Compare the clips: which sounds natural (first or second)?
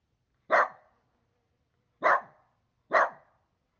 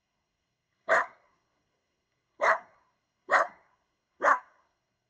first